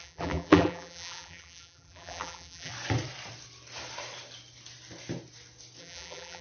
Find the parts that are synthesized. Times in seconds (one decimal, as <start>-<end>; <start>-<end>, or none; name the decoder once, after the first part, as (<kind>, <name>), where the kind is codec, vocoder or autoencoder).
0.0-2.7 (vocoder, BigVGAN v2); 5.8-6.4